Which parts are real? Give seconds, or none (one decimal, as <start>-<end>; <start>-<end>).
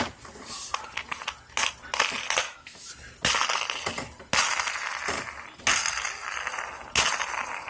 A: 0.0-2.4; 2.9-7.7